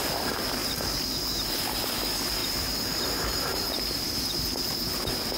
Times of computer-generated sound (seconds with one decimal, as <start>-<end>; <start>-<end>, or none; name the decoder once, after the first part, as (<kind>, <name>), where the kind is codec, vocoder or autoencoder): 2.4-4.2 (vocoder, BigVGAN v2)